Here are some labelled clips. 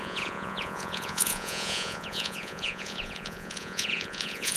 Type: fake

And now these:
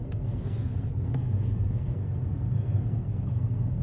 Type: fake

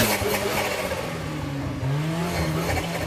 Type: real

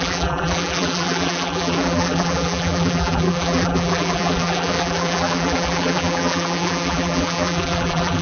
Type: fake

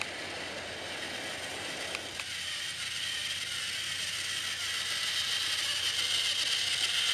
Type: real